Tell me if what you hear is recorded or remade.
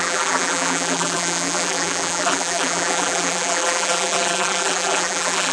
remade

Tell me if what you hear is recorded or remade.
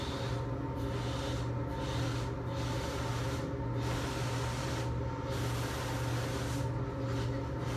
recorded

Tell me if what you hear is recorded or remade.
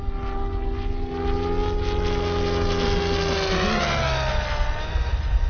recorded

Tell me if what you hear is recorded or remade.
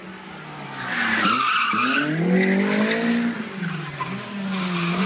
recorded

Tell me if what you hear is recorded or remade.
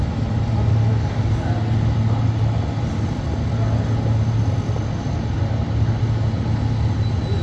recorded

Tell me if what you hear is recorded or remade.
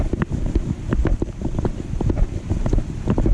recorded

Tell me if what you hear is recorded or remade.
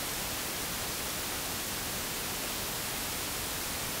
recorded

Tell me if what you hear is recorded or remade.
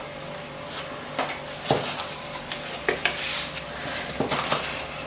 recorded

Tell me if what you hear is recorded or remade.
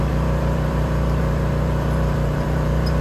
remade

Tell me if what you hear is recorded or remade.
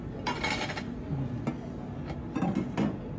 recorded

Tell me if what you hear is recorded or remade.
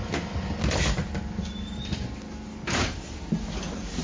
recorded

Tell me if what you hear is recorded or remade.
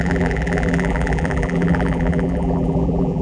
remade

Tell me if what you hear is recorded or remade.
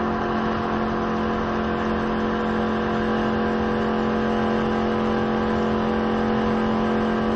recorded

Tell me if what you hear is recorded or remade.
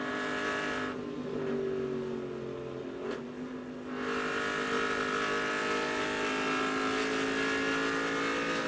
recorded